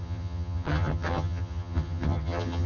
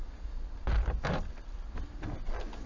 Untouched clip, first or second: second